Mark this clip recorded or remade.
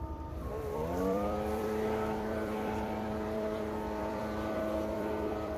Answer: remade